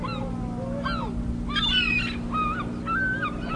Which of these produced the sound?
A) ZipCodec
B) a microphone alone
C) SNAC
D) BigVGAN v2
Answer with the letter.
B